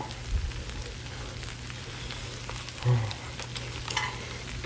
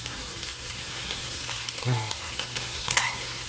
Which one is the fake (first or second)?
second